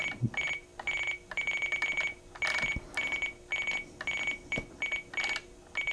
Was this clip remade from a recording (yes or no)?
no